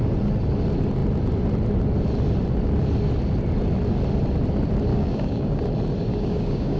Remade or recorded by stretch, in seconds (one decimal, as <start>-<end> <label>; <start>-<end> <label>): 0.0-4.9 recorded; 4.9-5.6 remade; 5.6-6.1 recorded; 6.1-6.8 remade